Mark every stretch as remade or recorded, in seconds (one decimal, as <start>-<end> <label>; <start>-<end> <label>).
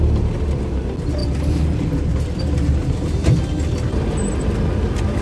0.0-5.2 recorded